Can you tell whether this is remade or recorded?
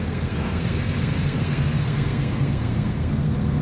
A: remade